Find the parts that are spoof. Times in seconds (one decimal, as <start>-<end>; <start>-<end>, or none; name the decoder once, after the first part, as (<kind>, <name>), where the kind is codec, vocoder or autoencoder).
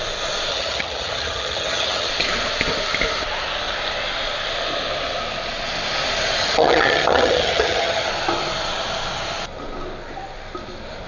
0.5-2.1 (vocoder, HiFi-GAN); 6.4-8.1